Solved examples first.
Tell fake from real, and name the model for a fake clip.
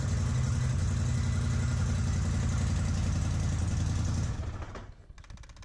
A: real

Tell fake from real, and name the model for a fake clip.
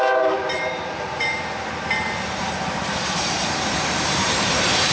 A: fake, vocoder, BigVGAN v2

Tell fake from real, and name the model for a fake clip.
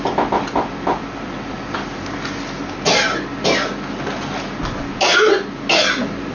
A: real